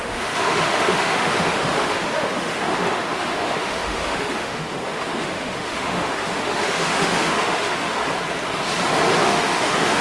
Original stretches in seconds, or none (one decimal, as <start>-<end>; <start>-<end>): 8.0-9.2

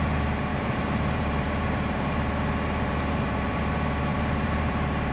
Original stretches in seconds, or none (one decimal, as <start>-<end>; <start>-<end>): 0.0-0.5; 3.6-4.1

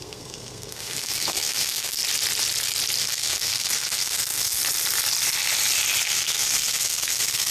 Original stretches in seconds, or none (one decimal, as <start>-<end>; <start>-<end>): 2.0-3.0; 4.6-6.0

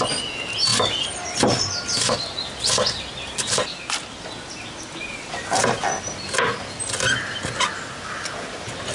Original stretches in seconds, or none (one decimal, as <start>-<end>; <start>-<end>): 0.0-8.9

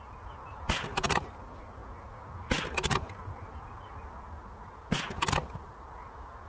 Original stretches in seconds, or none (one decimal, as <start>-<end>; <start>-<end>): 0.0-6.5

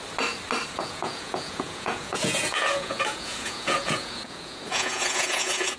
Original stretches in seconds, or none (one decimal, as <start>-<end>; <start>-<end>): 0.0-0.7

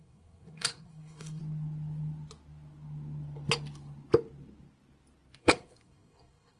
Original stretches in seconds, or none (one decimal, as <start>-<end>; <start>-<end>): 1.4-5.4

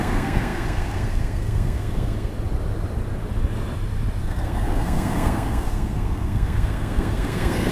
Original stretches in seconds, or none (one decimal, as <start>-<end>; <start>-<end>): 2.3-4.2